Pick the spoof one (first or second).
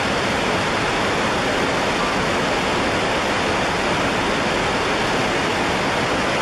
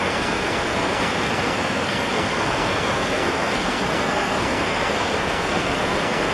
second